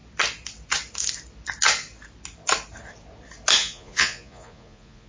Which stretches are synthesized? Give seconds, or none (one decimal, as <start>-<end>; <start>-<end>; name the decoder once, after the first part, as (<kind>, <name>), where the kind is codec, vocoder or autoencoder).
3.6-5.1 (vocoder, Vocos)